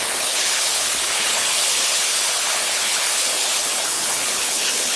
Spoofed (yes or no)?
yes